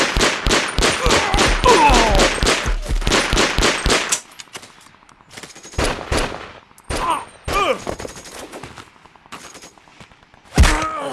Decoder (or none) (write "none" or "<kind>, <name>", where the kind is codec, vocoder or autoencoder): none